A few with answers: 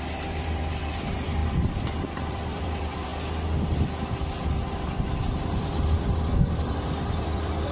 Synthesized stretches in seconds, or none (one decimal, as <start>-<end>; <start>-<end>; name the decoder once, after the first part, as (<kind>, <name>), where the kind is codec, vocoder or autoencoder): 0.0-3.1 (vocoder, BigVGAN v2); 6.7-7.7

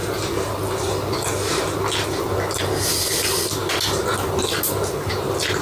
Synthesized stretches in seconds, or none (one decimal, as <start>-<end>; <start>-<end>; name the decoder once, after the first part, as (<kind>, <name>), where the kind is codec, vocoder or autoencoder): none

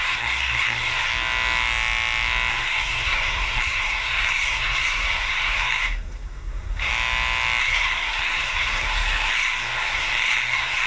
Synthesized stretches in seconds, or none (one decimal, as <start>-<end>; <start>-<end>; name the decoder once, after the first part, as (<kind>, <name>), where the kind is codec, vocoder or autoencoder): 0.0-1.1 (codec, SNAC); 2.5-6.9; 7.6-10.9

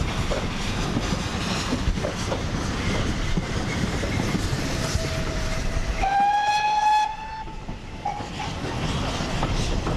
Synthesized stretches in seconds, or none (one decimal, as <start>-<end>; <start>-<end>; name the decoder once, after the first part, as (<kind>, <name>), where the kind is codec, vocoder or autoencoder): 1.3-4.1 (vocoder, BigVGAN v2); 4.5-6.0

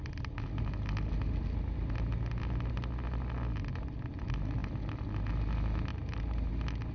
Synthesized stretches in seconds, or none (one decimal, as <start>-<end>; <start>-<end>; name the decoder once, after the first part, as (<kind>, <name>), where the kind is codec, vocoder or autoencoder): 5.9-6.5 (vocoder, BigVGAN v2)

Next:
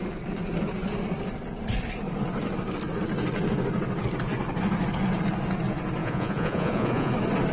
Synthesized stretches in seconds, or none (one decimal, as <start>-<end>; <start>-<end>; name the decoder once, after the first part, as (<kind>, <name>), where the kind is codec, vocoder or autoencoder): 6.0-7.1 (vocoder, Vocos)